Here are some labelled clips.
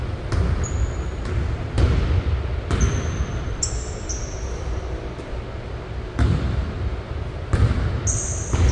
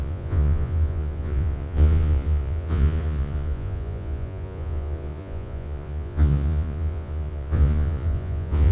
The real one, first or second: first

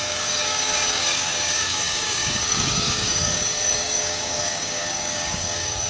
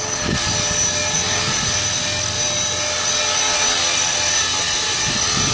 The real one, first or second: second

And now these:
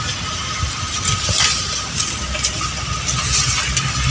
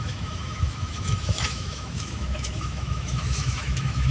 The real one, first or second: first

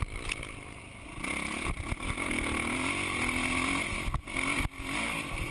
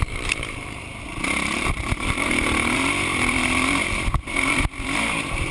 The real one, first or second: first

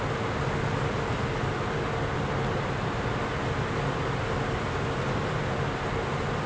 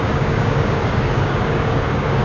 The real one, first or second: first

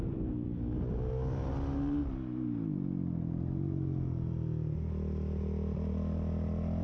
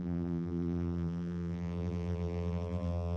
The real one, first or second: first